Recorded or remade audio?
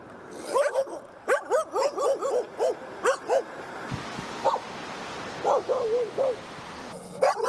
recorded